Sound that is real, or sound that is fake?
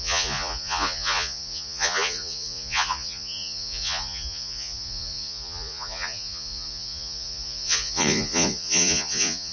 fake